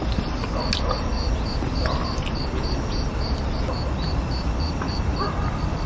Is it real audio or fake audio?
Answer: real